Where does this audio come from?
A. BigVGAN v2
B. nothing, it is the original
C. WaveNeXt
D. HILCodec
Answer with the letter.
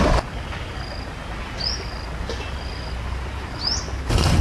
B